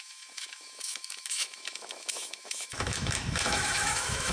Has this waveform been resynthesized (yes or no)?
yes